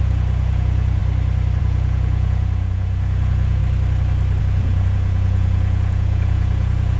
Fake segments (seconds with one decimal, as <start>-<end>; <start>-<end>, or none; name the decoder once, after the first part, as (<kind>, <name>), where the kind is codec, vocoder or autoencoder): 0.0-1.0 (vocoder, Vocos); 1.6-3.6; 4.4-7.0